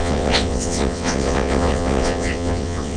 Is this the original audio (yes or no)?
no